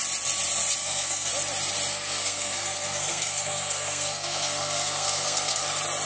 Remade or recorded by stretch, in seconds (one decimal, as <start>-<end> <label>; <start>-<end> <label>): 0.0-0.8 recorded; 0.8-1.3 remade; 1.3-1.9 recorded; 1.9-5.6 remade; 5.6-6.1 recorded